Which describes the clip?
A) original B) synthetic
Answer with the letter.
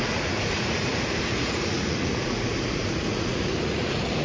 B